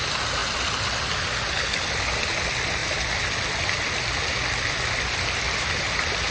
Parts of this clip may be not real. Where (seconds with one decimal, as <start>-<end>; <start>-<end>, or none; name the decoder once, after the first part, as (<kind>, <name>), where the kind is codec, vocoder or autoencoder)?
none